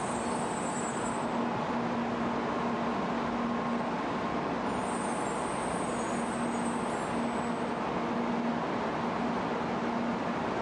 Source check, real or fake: real